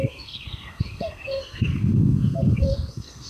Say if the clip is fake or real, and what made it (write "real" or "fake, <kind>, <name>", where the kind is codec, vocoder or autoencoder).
fake, codec, SNAC